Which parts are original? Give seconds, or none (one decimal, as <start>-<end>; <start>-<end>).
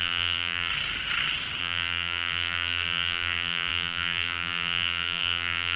0.7-1.6